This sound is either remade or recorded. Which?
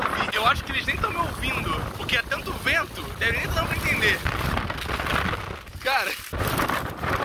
recorded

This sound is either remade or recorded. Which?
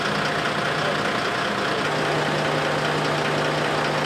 recorded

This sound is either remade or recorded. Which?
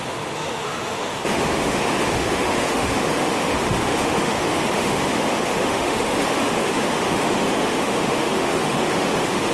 remade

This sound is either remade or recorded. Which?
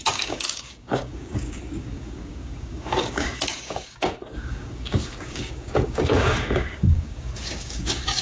remade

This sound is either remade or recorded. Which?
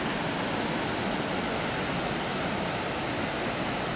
recorded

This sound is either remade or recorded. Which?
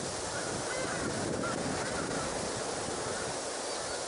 recorded